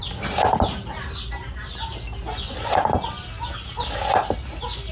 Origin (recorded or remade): recorded